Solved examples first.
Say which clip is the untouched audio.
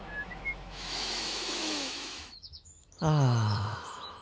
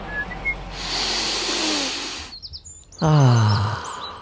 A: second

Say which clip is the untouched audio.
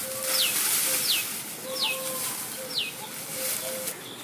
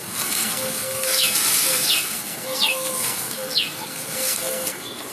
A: first